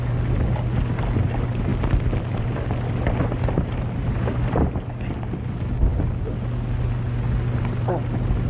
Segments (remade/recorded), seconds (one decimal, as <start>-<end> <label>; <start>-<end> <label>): 0.0-8.5 recorded